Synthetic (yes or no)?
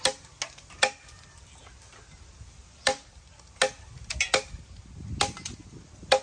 no